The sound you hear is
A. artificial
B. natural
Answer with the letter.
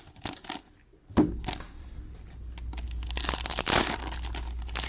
B